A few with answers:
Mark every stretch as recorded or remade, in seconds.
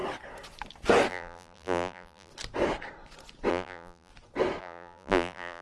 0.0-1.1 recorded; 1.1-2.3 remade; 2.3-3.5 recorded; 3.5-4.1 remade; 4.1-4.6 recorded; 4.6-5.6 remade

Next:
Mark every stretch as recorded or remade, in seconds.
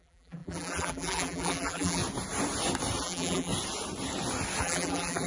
0.0-2.0 remade; 2.0-3.0 recorded; 3.0-3.5 remade; 3.5-4.6 recorded; 4.6-5.3 remade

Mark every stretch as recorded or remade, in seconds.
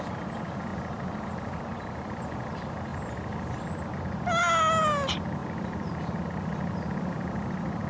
0.0-5.4 recorded; 5.4-6.0 remade; 6.0-7.9 recorded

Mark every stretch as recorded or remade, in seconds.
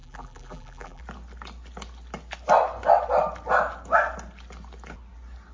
0.0-1.0 remade; 1.0-5.5 recorded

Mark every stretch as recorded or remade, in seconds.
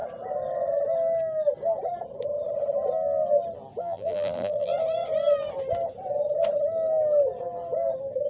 0.0-3.8 recorded; 3.8-4.7 remade; 4.7-8.3 recorded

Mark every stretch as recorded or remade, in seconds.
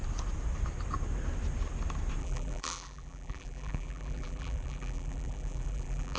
0.0-2.2 recorded; 2.2-6.2 remade